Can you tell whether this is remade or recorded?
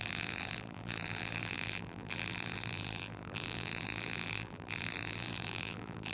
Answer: remade